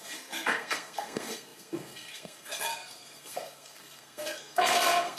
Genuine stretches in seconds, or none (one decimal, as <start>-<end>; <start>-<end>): none

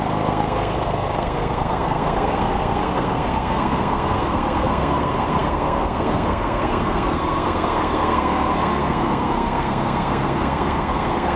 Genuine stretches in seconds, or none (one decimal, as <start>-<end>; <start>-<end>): none

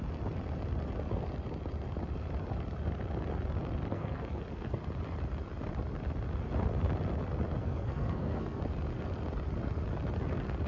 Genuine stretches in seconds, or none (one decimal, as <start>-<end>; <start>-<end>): 0.0-3.9; 4.8-7.6; 8.6-10.7

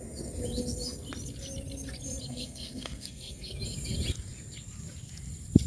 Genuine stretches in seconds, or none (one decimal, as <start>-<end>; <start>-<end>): 0.0-2.3; 3.5-5.7

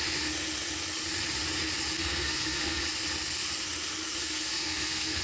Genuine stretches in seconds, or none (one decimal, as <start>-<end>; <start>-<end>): 0.0-2.0; 2.8-4.2

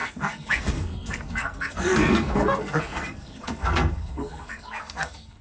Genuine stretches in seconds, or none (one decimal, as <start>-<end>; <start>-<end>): none

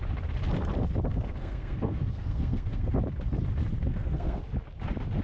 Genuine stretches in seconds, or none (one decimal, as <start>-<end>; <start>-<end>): 0.0-1.1; 3.0-3.8; 4.4-5.2

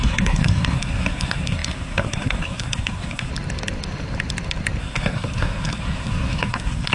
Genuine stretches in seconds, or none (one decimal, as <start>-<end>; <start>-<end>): 3.3-4.8